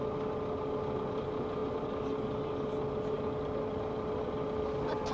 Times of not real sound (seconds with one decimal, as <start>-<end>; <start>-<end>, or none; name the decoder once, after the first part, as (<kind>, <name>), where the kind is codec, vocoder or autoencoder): none